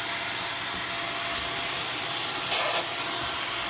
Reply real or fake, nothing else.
real